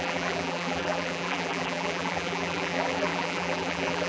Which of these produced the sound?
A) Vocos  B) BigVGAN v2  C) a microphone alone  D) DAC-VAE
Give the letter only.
B